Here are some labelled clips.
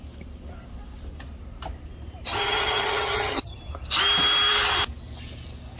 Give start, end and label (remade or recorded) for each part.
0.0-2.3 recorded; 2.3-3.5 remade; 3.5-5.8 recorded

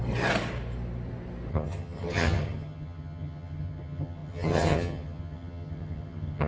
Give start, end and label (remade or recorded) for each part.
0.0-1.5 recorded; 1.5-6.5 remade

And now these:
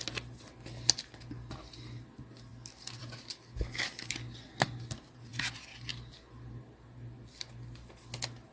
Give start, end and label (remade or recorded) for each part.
0.0-8.5 recorded

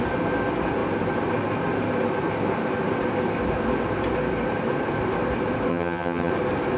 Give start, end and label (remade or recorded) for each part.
0.0-5.7 recorded; 5.7-6.3 remade; 6.3-6.8 recorded

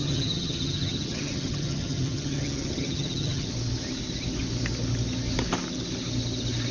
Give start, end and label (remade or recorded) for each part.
0.0-3.5 remade; 3.5-6.7 recorded